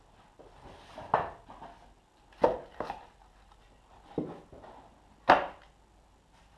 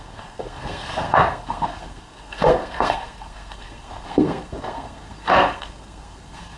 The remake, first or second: second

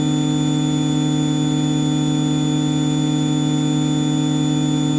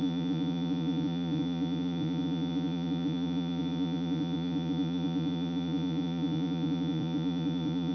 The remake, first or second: second